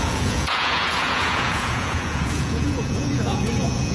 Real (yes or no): no